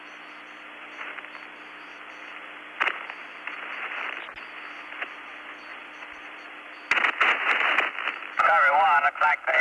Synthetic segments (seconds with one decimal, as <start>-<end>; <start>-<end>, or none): none